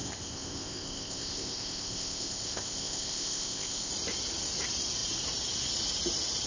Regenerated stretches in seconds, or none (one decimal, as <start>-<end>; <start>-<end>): 0.0-3.9